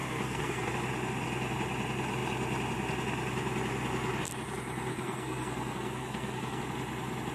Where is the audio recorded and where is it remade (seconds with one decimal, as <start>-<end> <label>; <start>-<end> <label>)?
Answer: 0.0-0.7 remade; 0.7-4.9 recorded; 4.9-6.6 remade; 6.6-7.3 recorded

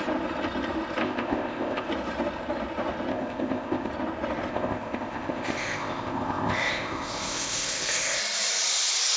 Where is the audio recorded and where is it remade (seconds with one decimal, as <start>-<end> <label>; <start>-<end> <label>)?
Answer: 0.0-1.0 recorded; 1.0-1.9 remade; 1.9-3.1 recorded; 3.1-3.9 remade; 3.9-4.5 recorded; 4.5-8.2 remade; 8.2-9.2 recorded

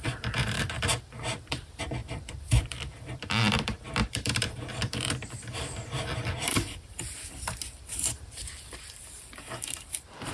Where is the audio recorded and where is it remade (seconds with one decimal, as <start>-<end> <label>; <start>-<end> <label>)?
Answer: 0.0-10.3 remade

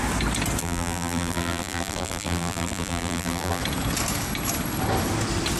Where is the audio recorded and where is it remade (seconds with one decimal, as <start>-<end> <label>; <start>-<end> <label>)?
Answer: 0.0-0.6 recorded; 0.6-3.6 remade; 3.6-5.6 recorded

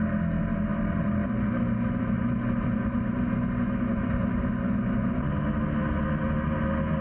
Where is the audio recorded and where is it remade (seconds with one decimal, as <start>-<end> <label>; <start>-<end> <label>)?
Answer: 0.0-0.7 recorded; 0.7-3.3 remade; 3.3-3.9 recorded; 3.9-4.4 remade; 4.4-7.0 recorded

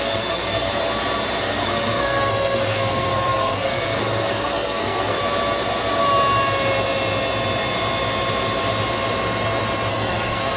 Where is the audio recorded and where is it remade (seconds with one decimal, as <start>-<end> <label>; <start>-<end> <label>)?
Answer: 0.0-0.7 remade; 0.7-1.4 recorded; 1.4-5.2 remade; 5.2-9.9 recorded; 9.9-10.6 remade